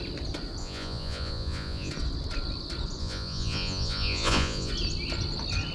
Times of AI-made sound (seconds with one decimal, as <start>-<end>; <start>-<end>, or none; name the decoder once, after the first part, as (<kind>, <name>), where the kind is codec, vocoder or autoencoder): 0.6-1.9 (vocoder, Vocos); 3.0-4.7